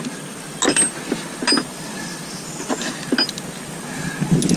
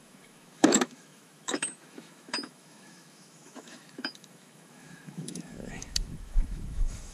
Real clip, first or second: first